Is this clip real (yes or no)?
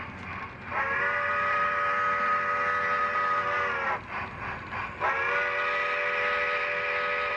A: yes